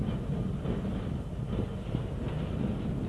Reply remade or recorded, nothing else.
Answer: recorded